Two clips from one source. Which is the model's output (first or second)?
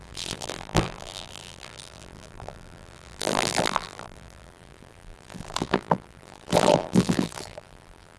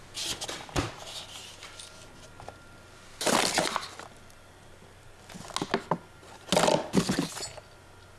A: first